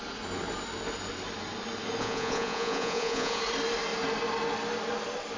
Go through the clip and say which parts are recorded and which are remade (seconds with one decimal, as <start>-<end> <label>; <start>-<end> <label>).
0.0-2.0 recorded; 2.0-3.4 remade; 3.4-5.4 recorded